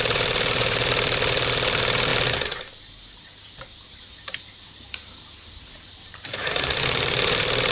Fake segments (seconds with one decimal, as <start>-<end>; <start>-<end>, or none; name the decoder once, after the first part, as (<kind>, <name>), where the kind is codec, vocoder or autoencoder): 0.0-2.1 (vocoder, BigVGAN v2); 4.0-7.7